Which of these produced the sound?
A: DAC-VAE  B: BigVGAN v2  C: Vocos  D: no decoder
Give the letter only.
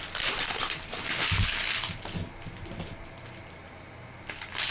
D